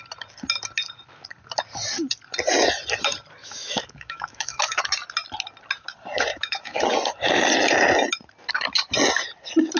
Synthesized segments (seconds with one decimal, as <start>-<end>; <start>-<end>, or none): 3.4-4.8; 6.3-6.8